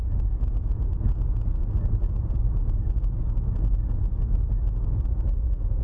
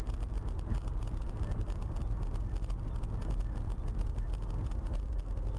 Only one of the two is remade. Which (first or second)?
first